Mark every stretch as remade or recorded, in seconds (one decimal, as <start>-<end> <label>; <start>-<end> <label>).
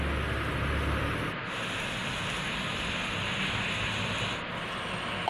0.0-5.3 recorded